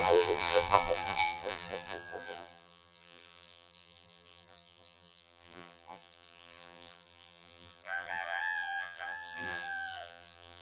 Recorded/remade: remade